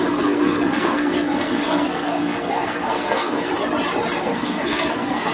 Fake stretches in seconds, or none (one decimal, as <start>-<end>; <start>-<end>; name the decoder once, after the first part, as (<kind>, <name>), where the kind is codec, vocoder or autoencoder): 0.0-3.5 (codec, SNAC); 4.2-5.3